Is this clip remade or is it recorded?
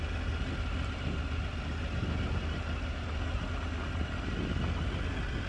recorded